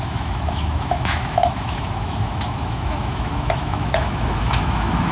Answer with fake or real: fake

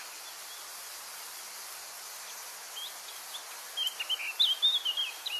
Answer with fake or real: real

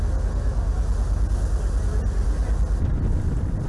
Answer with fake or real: real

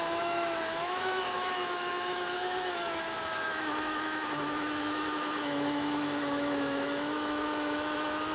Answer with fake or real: fake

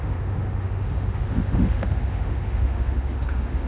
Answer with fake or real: fake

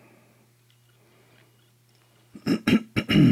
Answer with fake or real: real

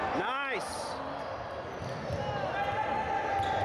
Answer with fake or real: real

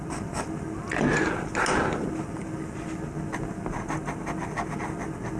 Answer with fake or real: real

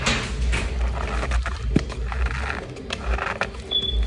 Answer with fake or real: real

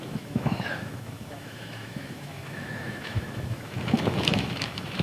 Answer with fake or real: fake